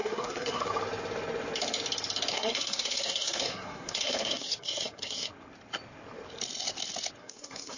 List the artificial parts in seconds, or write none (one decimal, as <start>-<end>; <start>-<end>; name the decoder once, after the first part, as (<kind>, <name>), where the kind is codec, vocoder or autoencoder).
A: 0.0-0.7 (codec, SNAC); 2.3-5.3; 7.2-7.8